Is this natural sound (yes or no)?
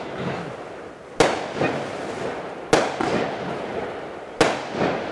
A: yes